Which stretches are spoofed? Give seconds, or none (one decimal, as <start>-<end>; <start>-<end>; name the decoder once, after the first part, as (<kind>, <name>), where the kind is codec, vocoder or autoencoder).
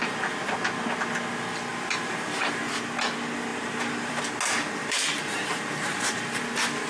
1.7-2.6 (vocoder, BigVGAN v2); 3.5-4.2; 4.8-6.4